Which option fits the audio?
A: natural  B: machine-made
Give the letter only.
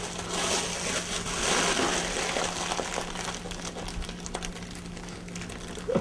A